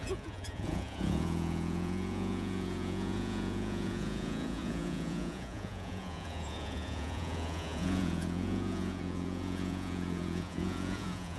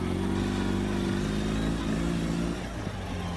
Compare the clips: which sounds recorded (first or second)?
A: second